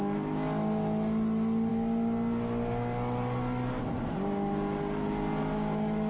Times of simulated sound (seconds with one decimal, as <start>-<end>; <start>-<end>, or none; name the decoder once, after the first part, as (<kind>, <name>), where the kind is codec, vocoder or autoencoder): none